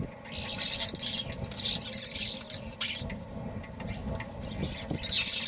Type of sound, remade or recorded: recorded